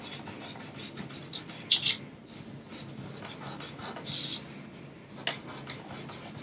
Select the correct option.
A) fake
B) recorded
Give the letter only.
B